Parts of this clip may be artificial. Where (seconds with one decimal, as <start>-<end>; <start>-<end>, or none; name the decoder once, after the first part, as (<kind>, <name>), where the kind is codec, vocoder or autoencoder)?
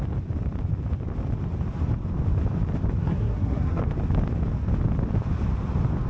3.0-3.8 (codec, SNAC)